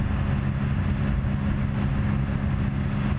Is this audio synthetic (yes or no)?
no